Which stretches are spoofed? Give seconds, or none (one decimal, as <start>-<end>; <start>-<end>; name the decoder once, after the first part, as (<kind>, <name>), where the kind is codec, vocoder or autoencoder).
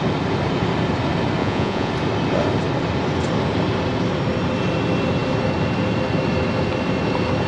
1.4-1.9 (vocoder, Vocos)